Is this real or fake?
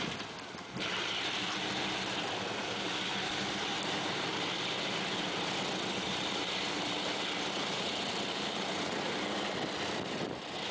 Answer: real